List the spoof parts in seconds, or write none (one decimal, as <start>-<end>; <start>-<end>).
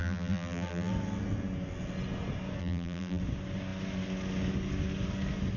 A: 0.0-0.9; 2.6-3.2